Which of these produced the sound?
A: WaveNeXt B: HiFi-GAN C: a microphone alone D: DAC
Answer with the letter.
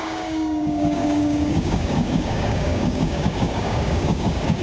D